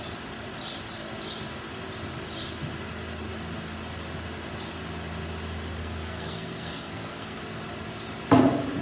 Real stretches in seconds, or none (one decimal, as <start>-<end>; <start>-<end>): 0.0-5.8; 7.4-8.8